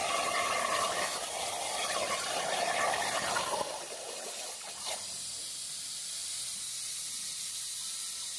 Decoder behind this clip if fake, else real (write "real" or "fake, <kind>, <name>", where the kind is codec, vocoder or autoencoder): fake, vocoder, BigVGAN v2